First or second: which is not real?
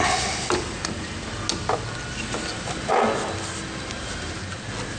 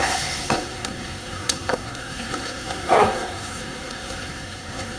second